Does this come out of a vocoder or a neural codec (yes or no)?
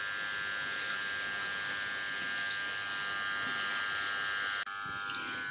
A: no